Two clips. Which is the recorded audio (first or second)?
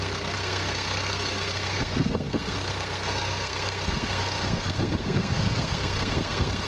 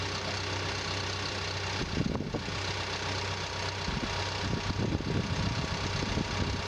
second